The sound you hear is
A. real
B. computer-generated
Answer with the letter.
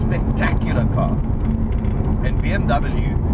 A